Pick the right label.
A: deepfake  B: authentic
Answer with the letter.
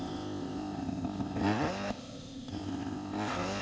A